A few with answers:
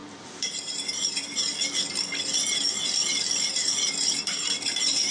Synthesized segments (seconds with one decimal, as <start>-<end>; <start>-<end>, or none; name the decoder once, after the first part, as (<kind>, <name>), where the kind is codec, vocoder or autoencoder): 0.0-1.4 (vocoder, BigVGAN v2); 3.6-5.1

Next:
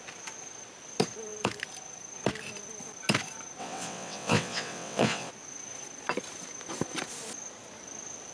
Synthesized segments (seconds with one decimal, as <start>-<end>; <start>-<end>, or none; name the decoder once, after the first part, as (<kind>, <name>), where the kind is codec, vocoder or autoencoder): 3.6-5.3 (vocoder, WaveNeXt)

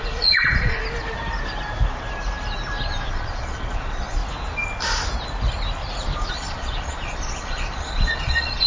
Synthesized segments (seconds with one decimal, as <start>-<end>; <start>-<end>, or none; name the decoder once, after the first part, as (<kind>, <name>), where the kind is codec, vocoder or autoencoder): 0.0-0.8 (vocoder, Vocos); 3.1-4.2; 6.3-8.7